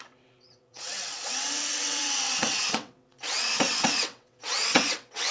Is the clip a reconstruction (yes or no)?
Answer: yes